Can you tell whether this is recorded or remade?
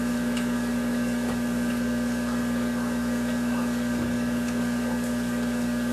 remade